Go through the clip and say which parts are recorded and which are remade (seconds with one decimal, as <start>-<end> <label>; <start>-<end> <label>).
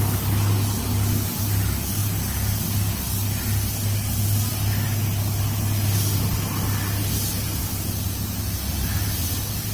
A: 0.0-9.7 recorded